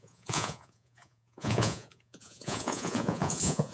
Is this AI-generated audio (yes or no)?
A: yes